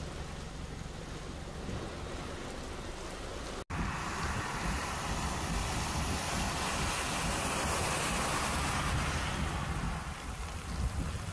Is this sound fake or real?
real